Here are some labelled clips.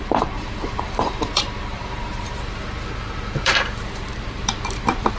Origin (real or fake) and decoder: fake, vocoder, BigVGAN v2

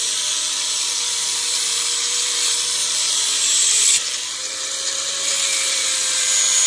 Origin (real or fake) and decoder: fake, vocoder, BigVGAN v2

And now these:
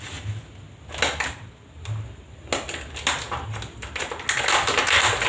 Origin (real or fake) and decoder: real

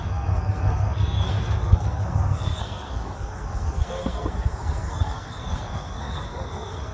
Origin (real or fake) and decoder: fake, codec, SNAC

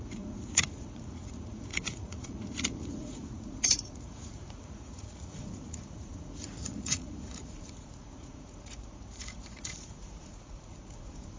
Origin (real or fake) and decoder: fake, vocoder, Vocos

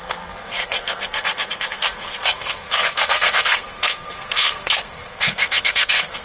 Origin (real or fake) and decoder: fake, codec, SNAC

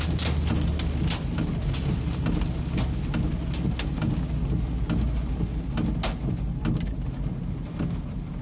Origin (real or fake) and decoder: real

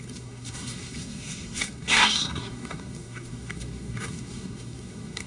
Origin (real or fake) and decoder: fake, codec, SNAC